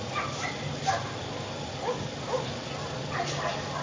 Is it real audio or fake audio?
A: real